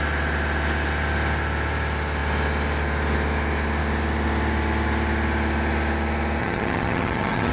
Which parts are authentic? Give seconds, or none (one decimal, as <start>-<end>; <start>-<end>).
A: 0.0-6.4